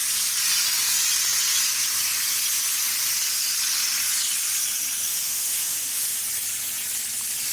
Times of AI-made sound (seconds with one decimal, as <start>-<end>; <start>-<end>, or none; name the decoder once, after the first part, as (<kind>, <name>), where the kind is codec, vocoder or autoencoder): 5.1-6.2 (autoencoder, DAC-VAE)